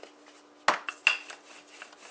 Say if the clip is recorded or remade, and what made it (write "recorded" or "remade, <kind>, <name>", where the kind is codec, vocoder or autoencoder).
recorded